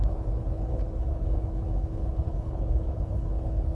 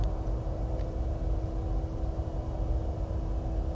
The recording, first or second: second